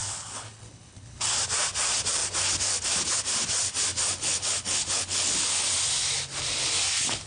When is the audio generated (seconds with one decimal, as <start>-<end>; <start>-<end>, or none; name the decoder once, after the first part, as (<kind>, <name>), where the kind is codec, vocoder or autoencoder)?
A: 0.0-1.4 (codec, HILCodec); 3.9-5.7